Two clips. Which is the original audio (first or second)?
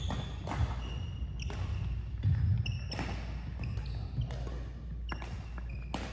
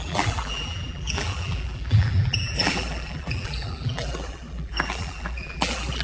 first